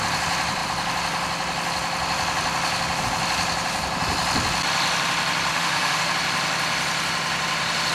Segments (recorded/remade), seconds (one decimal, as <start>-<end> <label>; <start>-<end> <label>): 0.0-5.5 recorded; 5.5-6.1 remade; 6.1-7.9 recorded